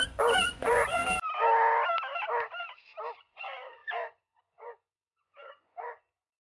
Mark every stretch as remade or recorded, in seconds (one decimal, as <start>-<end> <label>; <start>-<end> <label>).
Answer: 0.0-1.0 remade; 1.0-3.1 recorded; 3.1-6.5 remade